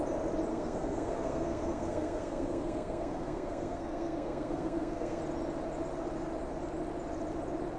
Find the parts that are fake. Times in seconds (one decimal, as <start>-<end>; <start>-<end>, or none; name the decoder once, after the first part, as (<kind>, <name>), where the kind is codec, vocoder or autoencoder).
0.5-5.2 (codec, SNAC)